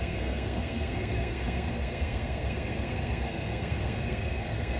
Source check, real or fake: fake